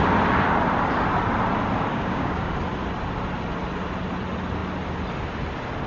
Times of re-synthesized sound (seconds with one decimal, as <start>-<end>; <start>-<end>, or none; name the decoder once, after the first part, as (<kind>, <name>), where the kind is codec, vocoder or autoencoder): 1.9-2.5 (codec, DAC)